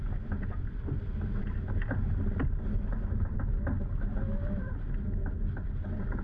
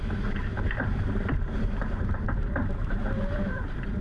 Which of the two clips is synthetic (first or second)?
second